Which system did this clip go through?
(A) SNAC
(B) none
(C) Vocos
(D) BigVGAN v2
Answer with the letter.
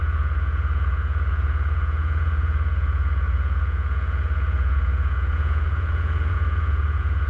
C